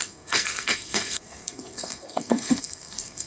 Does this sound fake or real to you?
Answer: fake